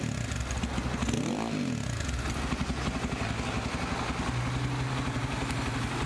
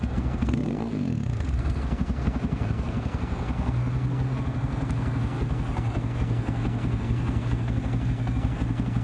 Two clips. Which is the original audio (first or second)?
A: first